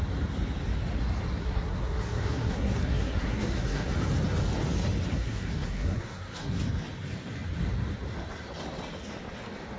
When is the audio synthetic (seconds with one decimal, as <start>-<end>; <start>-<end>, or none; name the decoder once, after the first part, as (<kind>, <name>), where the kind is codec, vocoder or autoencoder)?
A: 1.4-3.9 (codec, SNAC); 5.1-6.6

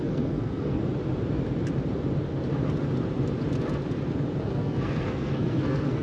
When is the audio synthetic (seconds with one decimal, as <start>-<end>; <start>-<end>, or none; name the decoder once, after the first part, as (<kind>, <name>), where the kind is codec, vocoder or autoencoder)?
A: 0.0-0.8 (codec, SNAC); 4.4-6.0